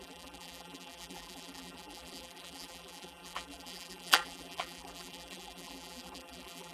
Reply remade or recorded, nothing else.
remade